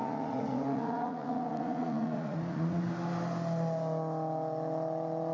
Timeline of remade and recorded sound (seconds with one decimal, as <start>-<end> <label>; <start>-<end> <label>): 0.0-2.8 remade; 2.8-5.3 recorded